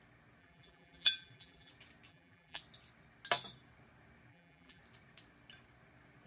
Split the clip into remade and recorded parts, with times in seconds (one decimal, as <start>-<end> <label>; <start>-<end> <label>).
0.0-0.4 recorded; 0.4-1.7 remade; 1.7-2.1 recorded; 2.1-2.6 remade; 2.6-4.3 recorded; 4.3-4.8 remade; 4.8-6.3 recorded